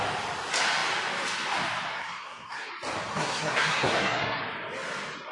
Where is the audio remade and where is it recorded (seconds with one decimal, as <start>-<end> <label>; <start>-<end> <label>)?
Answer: 0.0-1.9 recorded; 1.9-2.7 remade; 2.7-3.1 recorded; 3.1-4.4 remade; 4.4-5.3 recorded